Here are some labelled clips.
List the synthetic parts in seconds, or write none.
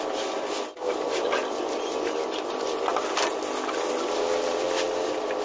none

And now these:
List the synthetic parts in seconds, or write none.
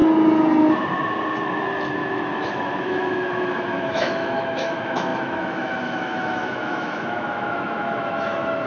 1.4-8.7 (autoencoder, DAC-VAE)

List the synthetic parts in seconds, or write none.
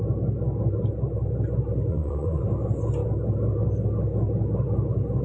1.9-2.4 (vocoder, Vocos)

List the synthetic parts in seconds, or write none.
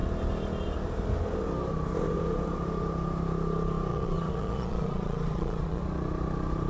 3.9-5.8 (vocoder, Vocos)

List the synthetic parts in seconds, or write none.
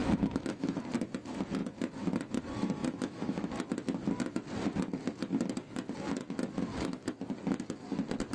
0.0-0.8 (autoencoder, DAC-VAE); 2.8-3.5; 6.7-7.2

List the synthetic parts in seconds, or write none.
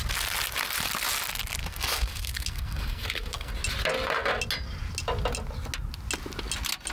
1.6-3.5 (codec, SNAC)